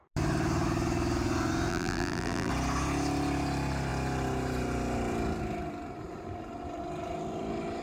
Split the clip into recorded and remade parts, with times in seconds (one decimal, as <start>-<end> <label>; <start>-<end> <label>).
0.0-1.7 recorded; 1.7-2.5 remade; 2.5-7.8 recorded